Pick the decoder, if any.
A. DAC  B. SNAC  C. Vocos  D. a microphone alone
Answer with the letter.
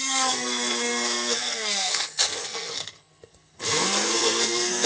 B